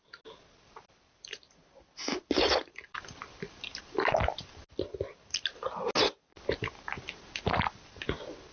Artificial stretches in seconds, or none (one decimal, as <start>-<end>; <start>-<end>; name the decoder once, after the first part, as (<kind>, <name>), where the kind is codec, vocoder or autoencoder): 2.2-3.2 (vocoder, BigVGAN v2)